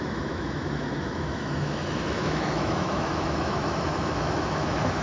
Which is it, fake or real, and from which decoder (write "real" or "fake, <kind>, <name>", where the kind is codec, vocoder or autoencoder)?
fake, autoencoder, DAC-VAE